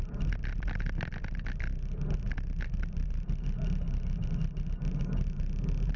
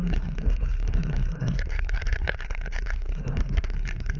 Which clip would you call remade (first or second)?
second